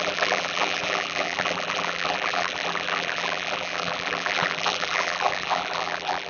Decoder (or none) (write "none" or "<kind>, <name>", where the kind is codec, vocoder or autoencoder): vocoder, BigVGAN v2